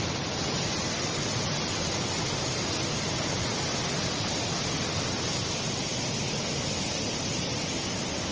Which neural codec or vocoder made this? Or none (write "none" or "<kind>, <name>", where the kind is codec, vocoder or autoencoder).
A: none